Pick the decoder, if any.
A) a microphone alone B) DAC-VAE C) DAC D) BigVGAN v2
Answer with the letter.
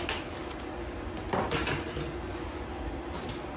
A